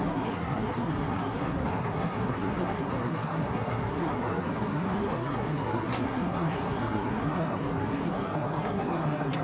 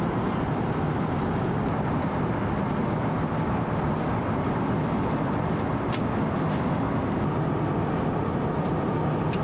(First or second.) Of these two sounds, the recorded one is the second